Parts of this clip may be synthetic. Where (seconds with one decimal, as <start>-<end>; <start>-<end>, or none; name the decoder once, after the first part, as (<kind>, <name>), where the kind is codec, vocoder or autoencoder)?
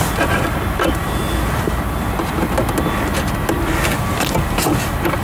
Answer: none